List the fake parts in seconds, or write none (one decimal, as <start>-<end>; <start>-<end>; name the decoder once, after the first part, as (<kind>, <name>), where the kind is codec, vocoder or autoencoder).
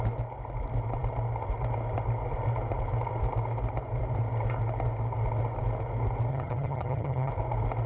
6.3-7.3 (vocoder, HiFi-GAN)